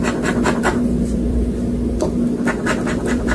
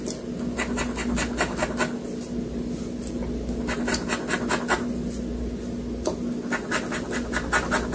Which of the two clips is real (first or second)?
second